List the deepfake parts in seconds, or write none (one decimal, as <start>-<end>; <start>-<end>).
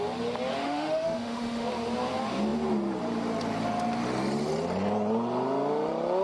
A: 0.6-1.7